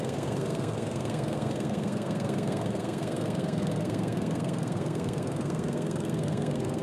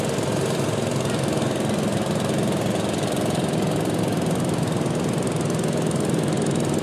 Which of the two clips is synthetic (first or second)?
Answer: first